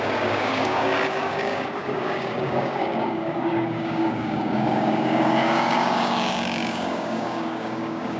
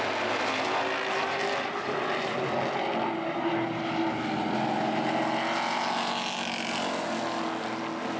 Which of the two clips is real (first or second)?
second